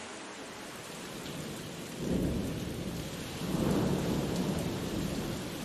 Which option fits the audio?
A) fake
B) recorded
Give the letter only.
A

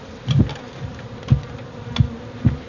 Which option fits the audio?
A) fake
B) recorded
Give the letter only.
B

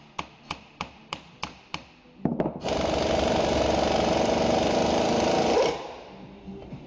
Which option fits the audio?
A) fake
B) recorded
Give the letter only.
B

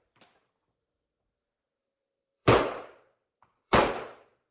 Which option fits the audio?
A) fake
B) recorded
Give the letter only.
A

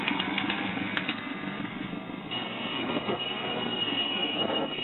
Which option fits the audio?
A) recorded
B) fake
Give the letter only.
B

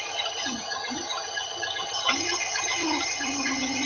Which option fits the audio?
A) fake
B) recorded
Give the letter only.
A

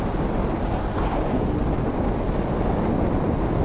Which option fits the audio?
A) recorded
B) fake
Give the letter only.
A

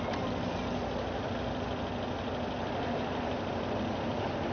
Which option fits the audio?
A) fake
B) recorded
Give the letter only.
B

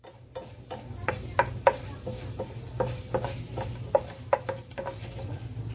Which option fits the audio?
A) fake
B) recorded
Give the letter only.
B